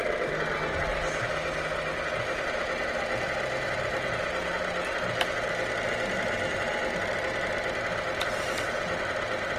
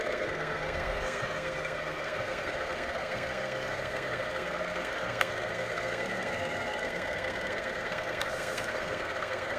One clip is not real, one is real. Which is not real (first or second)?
second